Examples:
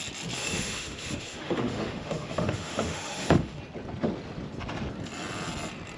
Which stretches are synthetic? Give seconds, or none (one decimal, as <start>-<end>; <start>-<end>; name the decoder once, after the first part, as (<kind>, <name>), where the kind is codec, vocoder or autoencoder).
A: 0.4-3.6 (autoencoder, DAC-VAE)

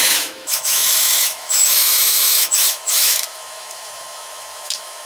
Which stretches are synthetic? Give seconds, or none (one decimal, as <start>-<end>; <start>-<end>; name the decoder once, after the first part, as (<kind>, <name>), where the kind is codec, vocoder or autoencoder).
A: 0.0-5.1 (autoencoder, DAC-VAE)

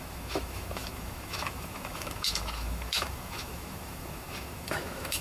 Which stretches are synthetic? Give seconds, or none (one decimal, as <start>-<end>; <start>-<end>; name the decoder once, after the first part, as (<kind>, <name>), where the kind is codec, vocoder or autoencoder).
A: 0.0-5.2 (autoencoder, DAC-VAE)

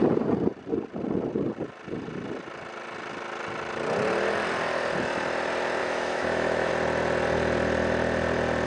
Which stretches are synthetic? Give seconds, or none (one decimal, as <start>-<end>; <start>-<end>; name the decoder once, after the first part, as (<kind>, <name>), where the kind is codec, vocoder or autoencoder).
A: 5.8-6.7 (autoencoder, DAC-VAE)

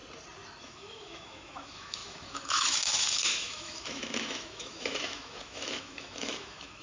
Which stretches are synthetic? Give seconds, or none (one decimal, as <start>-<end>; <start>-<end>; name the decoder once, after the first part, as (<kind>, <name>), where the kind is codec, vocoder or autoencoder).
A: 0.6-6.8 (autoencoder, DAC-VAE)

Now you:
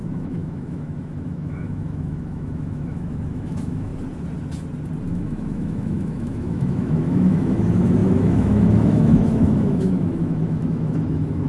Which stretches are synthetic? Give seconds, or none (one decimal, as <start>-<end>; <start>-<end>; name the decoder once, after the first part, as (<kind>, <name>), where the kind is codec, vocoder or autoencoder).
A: 0.0-3.9 (autoencoder, DAC-VAE); 5.1-11.5